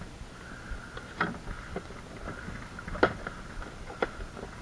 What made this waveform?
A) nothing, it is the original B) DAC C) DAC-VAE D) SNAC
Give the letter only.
A